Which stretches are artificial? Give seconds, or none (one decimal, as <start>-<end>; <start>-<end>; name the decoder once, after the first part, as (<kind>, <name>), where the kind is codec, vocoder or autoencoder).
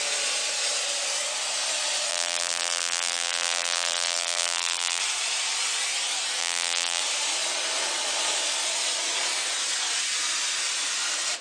2.1-5.0 (vocoder, BigVGAN v2); 6.4-7.0